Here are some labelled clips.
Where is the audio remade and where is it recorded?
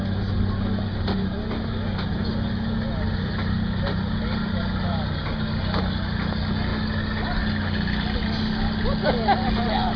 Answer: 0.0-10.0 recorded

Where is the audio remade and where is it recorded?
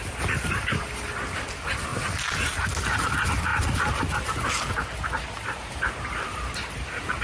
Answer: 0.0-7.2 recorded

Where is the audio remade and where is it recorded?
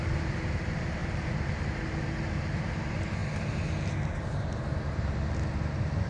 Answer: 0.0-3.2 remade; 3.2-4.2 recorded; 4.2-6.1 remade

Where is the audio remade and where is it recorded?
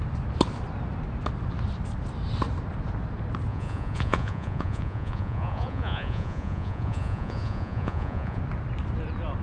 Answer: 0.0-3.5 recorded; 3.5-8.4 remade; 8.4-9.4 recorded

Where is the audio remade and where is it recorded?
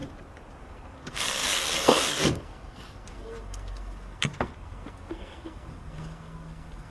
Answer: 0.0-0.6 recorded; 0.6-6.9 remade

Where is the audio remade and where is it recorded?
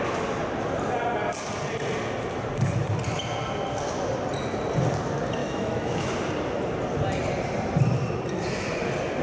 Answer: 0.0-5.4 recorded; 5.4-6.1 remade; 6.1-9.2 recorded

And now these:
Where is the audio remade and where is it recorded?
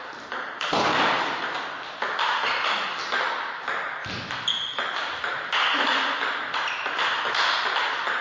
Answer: 0.0-8.2 recorded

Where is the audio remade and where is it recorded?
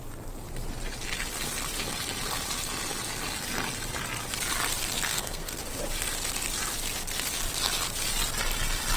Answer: 0.0-5.1 recorded; 5.1-5.6 remade; 5.6-9.0 recorded